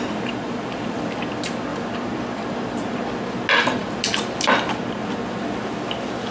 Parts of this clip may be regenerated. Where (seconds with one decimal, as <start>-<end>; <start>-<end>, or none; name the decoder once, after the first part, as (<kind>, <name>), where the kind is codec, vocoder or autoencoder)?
1.7-3.1 (vocoder, BigVGAN v2)